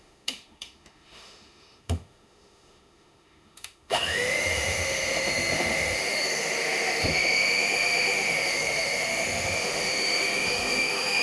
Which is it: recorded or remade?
remade